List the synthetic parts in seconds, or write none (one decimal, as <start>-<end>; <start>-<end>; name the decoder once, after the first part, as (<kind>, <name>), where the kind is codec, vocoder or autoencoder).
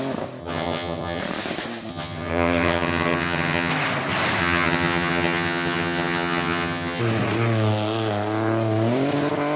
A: 0.4-1.2 (vocoder, HiFi-GAN); 1.9-3.7; 4.4-7.0